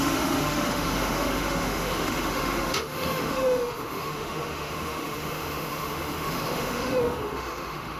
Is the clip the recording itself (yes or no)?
no